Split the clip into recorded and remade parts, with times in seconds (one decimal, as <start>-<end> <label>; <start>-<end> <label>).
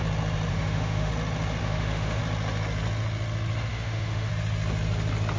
0.0-0.5 recorded; 0.5-1.1 remade; 1.1-1.6 recorded; 1.6-2.2 remade; 2.2-3.7 recorded; 3.7-4.3 remade; 4.3-5.4 recorded